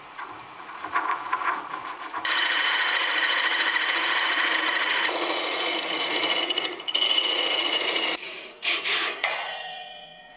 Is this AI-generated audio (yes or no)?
yes